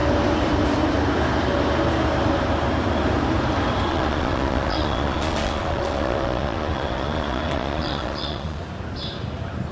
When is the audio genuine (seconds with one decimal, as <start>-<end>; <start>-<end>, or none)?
0.0-3.9; 8.6-9.7